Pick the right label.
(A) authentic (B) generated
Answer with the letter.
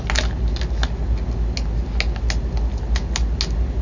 A